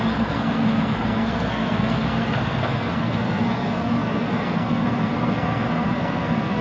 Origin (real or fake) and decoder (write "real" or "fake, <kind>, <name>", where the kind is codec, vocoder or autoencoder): fake, codec, SNAC